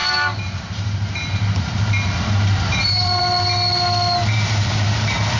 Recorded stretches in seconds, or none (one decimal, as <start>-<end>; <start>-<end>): 3.2-4.2